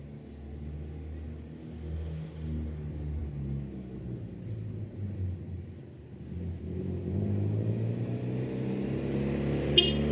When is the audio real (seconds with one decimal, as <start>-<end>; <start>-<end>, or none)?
0.0-10.1